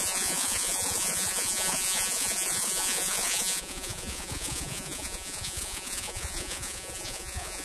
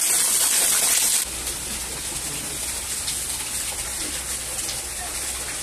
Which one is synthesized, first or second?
first